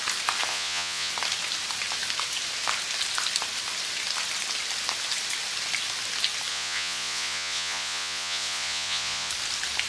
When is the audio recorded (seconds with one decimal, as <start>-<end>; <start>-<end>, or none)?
0.0-0.5; 1.1-6.5; 9.3-9.9